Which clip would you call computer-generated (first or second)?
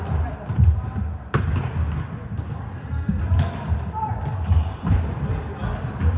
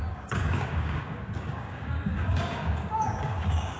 second